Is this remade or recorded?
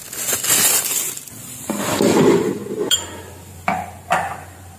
remade